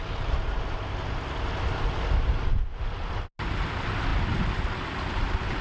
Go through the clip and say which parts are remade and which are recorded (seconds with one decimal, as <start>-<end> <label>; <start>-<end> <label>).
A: 0.0-5.6 recorded